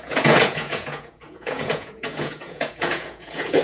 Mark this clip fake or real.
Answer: fake